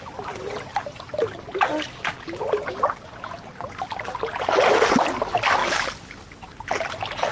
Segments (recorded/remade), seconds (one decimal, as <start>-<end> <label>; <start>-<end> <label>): 0.0-7.3 recorded